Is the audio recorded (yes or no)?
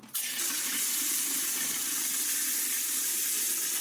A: yes